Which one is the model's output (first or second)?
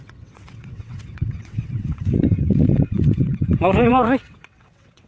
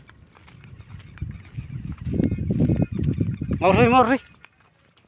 first